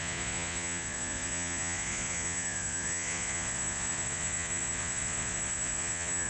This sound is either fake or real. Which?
fake